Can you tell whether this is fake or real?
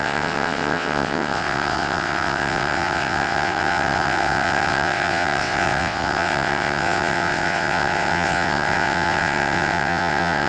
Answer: fake